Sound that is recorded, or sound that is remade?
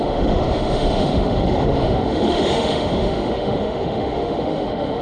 remade